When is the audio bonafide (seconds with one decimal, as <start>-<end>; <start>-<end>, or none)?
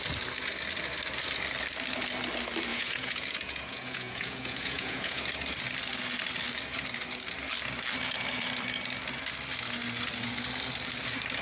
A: 0.0-2.7; 5.2-11.4